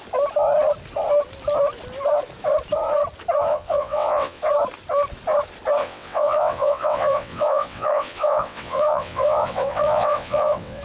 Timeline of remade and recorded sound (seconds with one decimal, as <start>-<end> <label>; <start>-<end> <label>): 0.0-3.5 recorded; 3.5-4.4 remade; 4.4-5.8 recorded; 5.8-10.8 remade